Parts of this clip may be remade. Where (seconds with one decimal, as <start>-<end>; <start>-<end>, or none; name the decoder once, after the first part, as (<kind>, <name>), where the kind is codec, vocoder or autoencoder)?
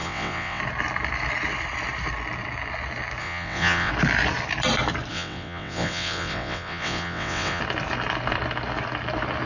0.0-0.6 (vocoder, WaveNeXt); 3.2-3.9; 5.1-7.6